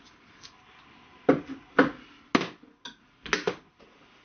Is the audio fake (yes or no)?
no